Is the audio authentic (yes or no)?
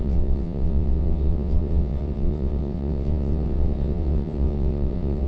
no